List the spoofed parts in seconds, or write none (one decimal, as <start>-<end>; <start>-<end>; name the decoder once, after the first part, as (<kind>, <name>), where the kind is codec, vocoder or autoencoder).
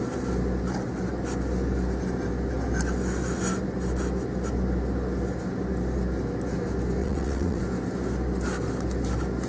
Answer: 7.0-7.6 (vocoder, WaveNeXt)